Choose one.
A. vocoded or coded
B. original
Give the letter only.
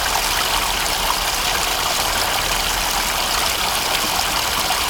B